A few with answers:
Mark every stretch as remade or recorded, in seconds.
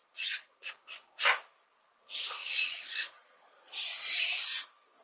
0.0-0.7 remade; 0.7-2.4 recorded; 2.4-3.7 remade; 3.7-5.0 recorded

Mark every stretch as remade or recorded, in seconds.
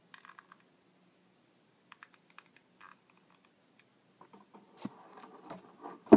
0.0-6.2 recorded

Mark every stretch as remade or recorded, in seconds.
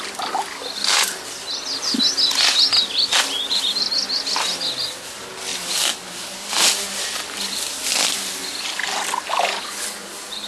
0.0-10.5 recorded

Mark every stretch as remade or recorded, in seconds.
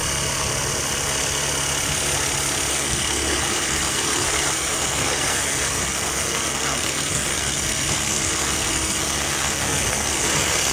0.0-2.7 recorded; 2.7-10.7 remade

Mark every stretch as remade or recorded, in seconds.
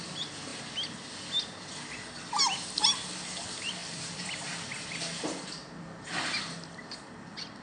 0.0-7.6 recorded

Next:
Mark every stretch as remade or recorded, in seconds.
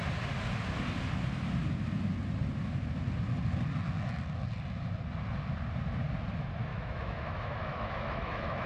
0.0-6.7 recorded; 6.7-8.7 remade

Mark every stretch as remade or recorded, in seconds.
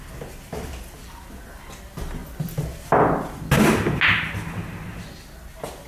0.0-5.9 recorded